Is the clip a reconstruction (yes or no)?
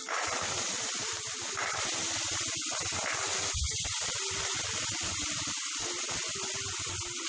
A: yes